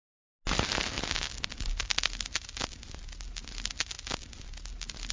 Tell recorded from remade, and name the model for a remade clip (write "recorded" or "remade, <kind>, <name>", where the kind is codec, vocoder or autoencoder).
recorded